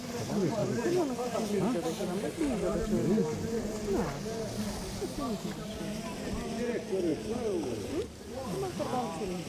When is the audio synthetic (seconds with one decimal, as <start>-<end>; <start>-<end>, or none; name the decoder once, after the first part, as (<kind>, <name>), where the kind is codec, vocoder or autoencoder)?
3.2-3.7 (vocoder, BigVGAN v2); 7.1-7.7